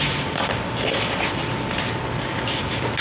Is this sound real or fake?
real